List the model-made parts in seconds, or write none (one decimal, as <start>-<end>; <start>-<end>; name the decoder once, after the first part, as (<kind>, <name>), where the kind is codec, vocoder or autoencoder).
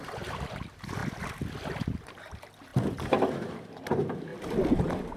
0.0-1.0 (vocoder, BigVGAN v2); 1.7-4.3; 4.8-5.2